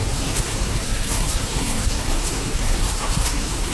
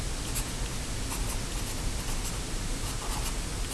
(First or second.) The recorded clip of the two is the second